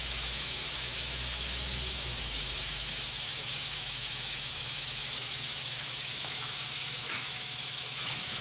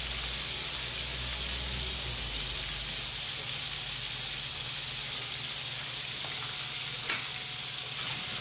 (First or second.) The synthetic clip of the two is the first